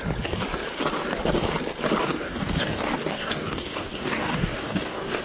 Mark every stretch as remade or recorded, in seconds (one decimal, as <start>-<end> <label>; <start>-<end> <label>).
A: 0.0-2.0 recorded; 2.0-5.2 remade